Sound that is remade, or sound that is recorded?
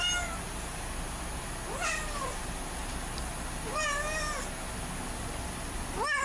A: recorded